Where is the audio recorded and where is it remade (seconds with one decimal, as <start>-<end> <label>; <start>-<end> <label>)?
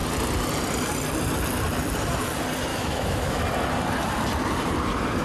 0.0-2.7 recorded; 2.7-3.4 remade; 3.4-5.2 recorded